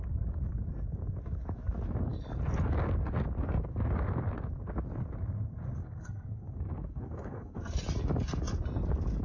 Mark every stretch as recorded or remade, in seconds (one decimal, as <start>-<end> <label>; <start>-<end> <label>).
0.0-5.8 recorded; 5.8-7.6 remade; 7.6-9.2 recorded